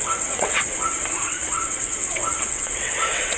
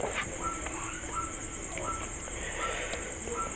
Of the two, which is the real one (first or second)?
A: second